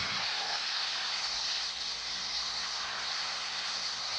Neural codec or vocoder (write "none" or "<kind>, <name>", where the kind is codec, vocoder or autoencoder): codec, SNAC